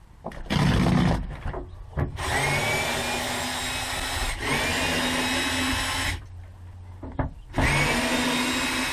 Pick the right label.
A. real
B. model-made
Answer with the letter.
A